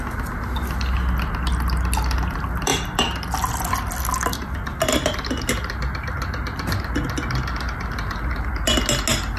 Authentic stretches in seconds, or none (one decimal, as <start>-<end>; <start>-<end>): 0.0-9.4